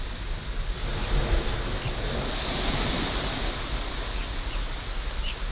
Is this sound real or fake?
real